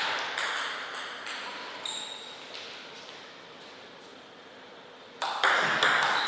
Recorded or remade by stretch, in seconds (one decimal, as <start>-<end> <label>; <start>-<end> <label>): 0.0-6.3 recorded